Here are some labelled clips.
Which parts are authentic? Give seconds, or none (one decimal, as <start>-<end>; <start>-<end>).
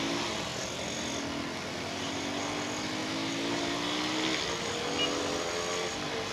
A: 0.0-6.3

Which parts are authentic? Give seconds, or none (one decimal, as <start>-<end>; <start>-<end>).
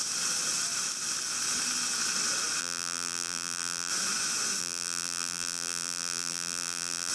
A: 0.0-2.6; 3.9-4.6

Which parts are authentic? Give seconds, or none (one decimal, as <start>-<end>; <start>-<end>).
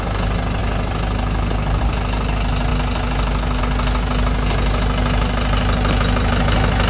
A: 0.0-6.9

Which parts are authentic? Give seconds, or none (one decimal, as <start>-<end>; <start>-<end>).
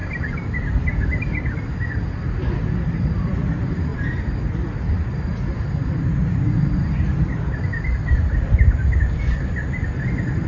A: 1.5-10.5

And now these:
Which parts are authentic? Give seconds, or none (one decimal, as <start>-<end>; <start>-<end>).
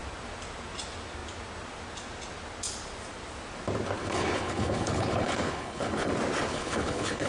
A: 0.0-4.0; 6.1-6.5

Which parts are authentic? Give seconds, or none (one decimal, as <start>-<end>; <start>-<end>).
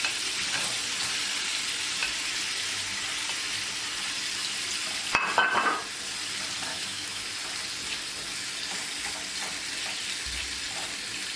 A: 0.0-6.7; 7.3-11.4